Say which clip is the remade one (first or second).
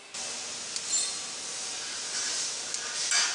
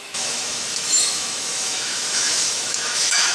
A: second